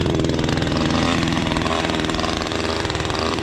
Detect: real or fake fake